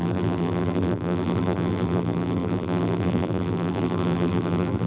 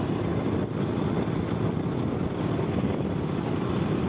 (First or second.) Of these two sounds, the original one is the second